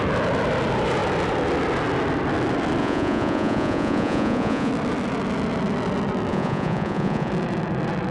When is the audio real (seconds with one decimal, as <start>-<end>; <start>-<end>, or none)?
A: 0.0-2.8; 4.7-6.3; 7.3-8.1